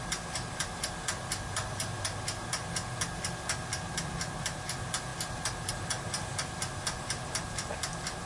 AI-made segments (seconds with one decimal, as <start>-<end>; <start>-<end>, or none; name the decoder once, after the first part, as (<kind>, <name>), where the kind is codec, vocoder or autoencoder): none